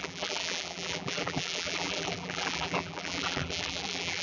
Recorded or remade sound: remade